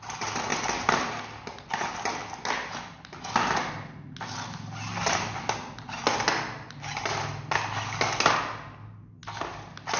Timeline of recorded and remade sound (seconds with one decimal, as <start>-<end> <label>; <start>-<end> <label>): 0.0-10.0 recorded